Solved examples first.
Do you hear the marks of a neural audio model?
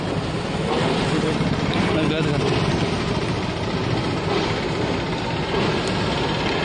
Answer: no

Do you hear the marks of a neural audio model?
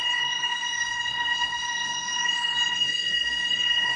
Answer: yes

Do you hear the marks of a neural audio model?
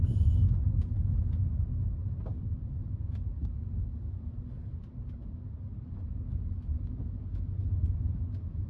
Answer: no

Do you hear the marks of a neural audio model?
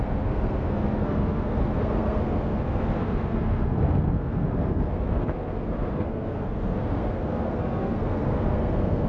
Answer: yes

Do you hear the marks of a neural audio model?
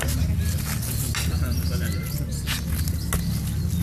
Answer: no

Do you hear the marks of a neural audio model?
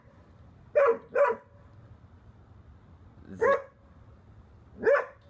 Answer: no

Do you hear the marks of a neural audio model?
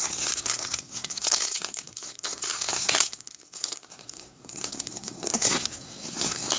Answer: yes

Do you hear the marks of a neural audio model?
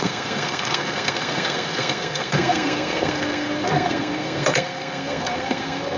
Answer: yes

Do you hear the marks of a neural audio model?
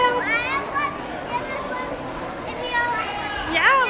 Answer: no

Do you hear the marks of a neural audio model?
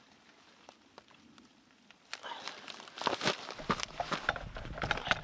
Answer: no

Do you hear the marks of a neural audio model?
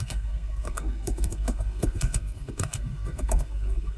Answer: yes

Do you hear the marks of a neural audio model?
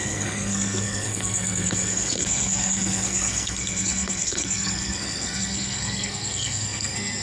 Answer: yes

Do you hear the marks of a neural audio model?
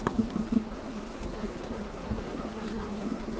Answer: yes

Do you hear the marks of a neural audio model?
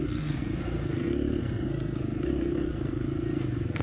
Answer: yes